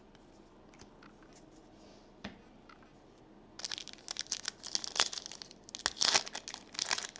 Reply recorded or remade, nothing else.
recorded